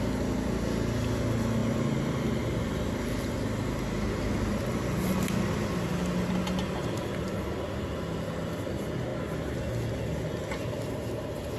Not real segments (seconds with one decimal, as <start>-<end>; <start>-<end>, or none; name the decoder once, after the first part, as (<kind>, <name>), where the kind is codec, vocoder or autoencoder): none